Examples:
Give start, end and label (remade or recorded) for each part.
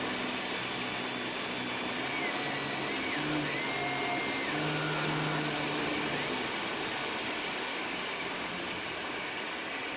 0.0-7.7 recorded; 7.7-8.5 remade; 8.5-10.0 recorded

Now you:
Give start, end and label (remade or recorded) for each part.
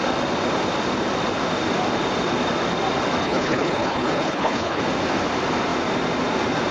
0.0-3.2 recorded; 3.2-4.8 remade; 4.8-6.7 recorded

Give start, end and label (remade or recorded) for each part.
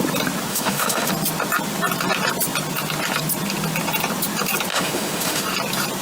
0.0-0.5 recorded; 0.5-1.1 remade; 1.1-4.7 recorded; 4.7-5.4 remade; 5.4-6.0 recorded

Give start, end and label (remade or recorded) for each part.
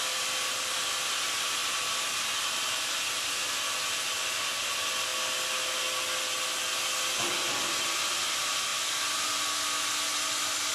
0.0-1.6 recorded; 1.6-3.4 remade; 3.4-10.7 recorded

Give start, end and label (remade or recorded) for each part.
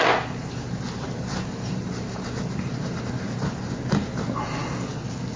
0.0-0.4 recorded; 0.4-3.6 remade; 3.6-5.4 recorded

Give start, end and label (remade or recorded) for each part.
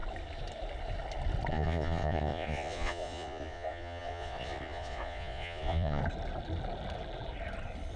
0.0-1.5 recorded; 1.5-6.0 remade; 6.0-8.0 recorded